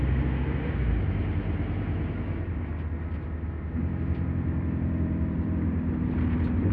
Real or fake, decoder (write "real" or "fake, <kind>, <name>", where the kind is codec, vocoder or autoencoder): real